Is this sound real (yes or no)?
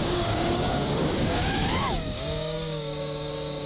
no